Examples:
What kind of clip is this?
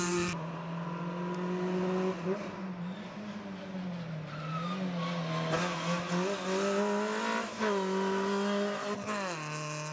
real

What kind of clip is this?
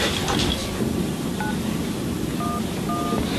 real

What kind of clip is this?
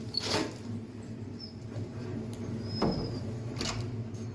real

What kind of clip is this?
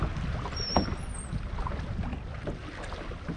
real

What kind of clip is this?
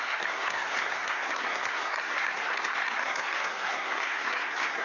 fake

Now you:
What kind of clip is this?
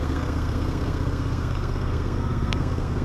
fake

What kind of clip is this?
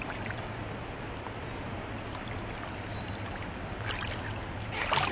real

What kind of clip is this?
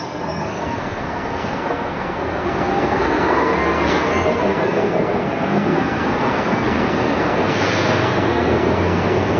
fake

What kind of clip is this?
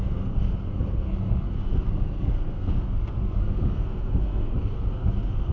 fake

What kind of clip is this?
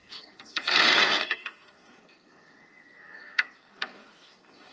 fake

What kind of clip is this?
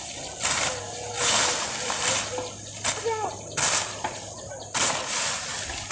real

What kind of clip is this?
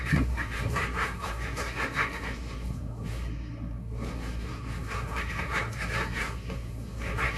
fake